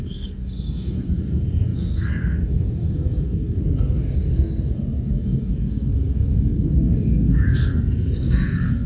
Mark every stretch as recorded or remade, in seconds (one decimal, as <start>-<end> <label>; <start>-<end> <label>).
0.0-8.9 remade